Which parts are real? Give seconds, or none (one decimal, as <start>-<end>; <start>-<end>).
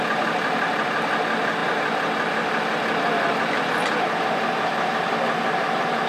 0.0-6.1